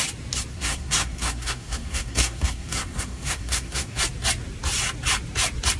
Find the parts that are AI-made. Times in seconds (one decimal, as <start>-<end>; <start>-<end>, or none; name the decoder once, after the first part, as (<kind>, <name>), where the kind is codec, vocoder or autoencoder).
0.5-4.0 (codec, SNAC)